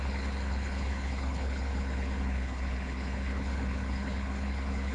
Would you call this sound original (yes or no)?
no